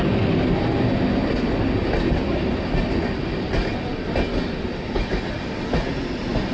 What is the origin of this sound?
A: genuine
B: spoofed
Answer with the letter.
A